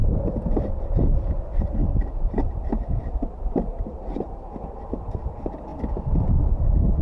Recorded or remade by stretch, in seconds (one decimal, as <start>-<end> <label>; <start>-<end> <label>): 0.0-0.8 remade; 0.8-1.8 recorded; 1.8-5.3 remade; 5.3-7.0 recorded

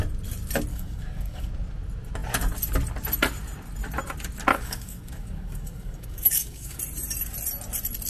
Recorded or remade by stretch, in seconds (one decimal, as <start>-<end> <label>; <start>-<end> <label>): 0.0-0.7 recorded; 0.7-1.5 remade; 1.5-4.5 recorded; 4.5-6.8 remade; 6.8-8.1 recorded

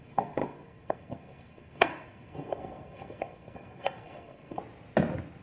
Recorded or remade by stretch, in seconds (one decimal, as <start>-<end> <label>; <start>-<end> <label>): 0.0-4.6 remade; 4.6-5.4 recorded

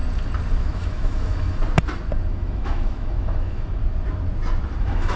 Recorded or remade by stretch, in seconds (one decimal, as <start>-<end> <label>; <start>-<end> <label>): 0.0-0.6 recorded; 0.6-1.6 remade; 1.6-2.3 recorded; 2.3-3.8 remade; 3.8-4.8 recorded; 4.8-5.2 remade

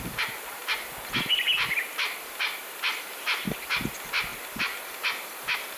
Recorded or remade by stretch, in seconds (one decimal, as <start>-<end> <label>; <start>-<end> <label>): 0.0-5.8 recorded

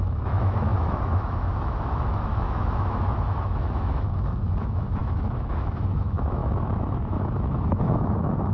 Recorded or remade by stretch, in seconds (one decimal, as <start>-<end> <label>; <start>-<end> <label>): 0.0-8.5 remade